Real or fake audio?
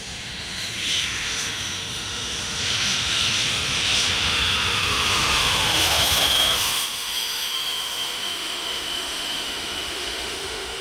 fake